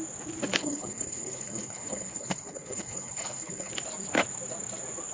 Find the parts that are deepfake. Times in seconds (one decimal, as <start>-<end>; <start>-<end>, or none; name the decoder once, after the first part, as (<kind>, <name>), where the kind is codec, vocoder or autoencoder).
0.6-3.7 (codec, HILCodec)